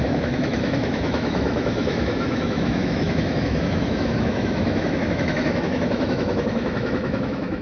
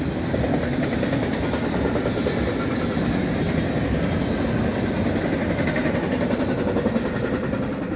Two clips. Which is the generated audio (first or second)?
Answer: first